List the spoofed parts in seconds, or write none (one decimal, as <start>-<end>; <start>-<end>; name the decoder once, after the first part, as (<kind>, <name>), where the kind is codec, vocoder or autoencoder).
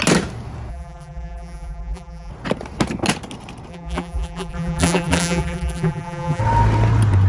0.7-2.3 (vocoder, BigVGAN v2); 3.7-6.4